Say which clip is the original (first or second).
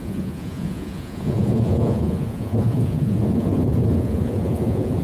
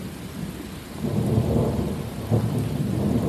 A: second